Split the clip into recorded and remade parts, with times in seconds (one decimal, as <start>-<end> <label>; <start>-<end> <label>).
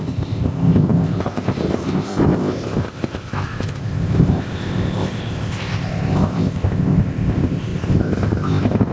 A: 0.0-8.9 remade